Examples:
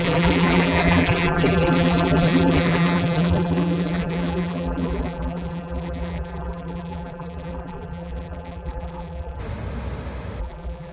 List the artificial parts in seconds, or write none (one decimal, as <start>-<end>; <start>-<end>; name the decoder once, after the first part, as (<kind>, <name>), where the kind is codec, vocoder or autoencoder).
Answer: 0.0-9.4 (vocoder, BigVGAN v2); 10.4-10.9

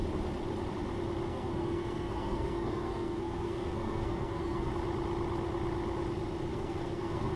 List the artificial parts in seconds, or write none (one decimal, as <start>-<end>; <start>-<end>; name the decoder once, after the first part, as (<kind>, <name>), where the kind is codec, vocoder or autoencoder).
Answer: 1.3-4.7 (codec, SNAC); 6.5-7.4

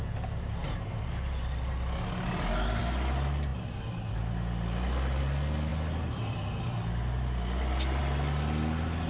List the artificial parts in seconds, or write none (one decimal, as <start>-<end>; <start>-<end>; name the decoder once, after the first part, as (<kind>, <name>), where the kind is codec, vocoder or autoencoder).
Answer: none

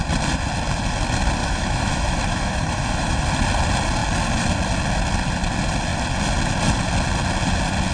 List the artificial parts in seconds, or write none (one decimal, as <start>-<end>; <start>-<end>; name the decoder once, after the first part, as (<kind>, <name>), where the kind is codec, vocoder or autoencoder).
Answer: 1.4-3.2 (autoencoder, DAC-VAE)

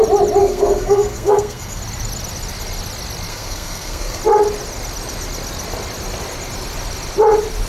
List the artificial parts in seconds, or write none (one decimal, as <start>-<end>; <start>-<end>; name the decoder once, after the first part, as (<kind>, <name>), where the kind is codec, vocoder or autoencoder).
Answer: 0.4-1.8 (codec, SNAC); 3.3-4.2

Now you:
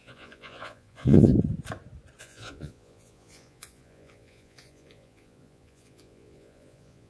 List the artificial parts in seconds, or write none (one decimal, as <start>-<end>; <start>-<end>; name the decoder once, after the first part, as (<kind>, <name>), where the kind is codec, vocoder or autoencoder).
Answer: 0.0-1.3 (vocoder, Vocos); 2.2-7.1